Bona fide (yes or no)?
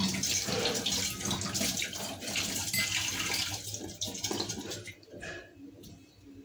yes